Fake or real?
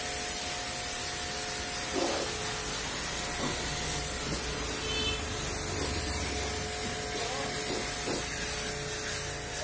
real